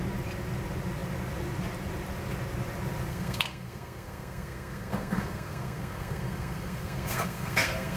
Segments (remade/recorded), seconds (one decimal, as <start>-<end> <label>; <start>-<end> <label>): 0.0-3.1 recorded; 3.1-8.0 remade